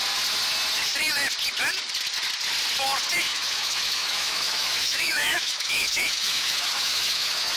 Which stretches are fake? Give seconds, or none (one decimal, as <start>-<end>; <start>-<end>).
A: 3.3-7.6